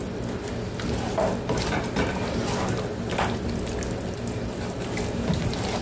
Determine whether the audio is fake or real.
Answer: real